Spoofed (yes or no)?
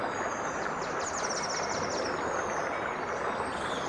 no